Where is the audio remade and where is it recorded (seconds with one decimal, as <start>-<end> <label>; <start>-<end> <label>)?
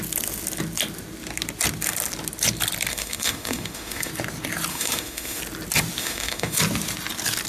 0.0-2.9 recorded; 2.9-4.1 remade; 4.1-4.7 recorded; 4.7-5.4 remade; 5.4-6.0 recorded; 6.0-6.6 remade; 6.6-7.5 recorded